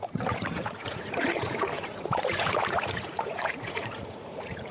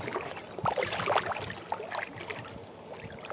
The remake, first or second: first